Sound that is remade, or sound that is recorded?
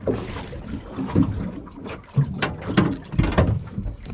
recorded